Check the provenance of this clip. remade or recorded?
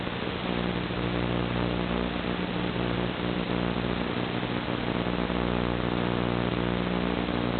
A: recorded